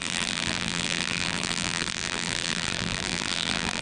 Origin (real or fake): fake